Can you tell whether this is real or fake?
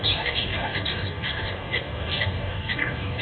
fake